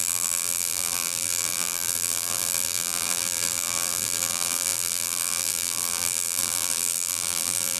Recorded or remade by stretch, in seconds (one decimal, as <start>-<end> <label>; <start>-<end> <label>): 0.0-7.8 remade